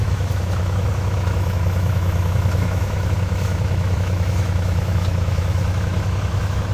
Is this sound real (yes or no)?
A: no